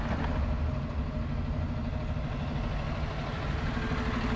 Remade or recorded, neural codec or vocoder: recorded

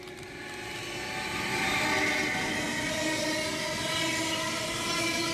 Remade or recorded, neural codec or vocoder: recorded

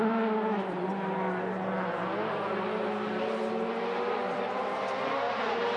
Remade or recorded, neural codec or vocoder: recorded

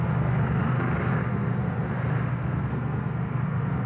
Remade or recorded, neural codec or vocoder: remade, codec, SNAC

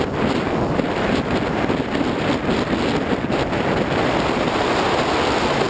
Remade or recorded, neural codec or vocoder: recorded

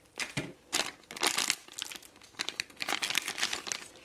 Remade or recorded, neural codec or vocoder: recorded